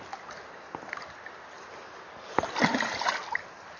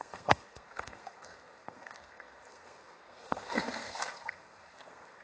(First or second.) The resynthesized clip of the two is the second